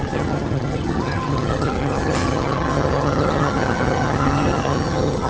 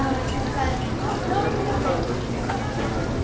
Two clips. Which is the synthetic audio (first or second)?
first